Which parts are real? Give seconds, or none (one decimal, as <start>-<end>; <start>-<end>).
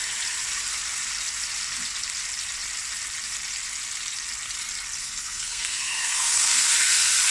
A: 0.0-5.0; 6.7-7.3